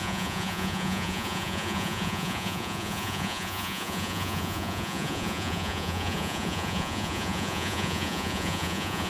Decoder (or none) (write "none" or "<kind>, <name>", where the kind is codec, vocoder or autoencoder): vocoder, Vocos